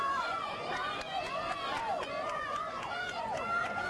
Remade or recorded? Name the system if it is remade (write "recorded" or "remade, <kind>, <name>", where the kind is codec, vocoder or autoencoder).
remade, vocoder, Vocos